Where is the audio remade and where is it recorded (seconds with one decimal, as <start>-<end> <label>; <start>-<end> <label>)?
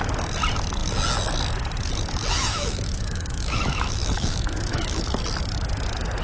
0.0-2.5 recorded; 2.5-5.1 remade; 5.1-6.2 recorded